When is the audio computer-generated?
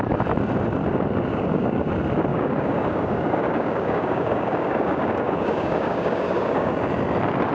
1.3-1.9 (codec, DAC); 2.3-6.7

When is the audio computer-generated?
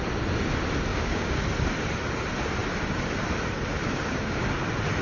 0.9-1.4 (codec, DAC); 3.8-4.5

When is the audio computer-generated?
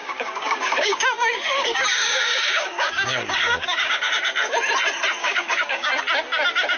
0.0-4.1 (codec, DAC); 5.2-6.0